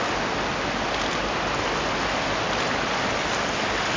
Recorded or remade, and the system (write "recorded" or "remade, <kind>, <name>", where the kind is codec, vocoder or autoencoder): recorded